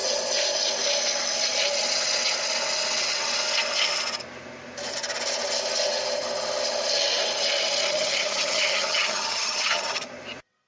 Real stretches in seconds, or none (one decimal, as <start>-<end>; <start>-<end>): 0.0-7.9; 10.1-10.7